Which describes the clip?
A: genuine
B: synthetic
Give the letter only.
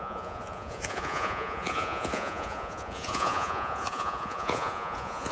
B